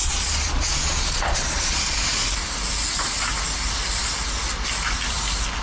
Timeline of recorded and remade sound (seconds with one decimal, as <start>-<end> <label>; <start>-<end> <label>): 0.0-2.0 remade; 2.0-5.6 recorded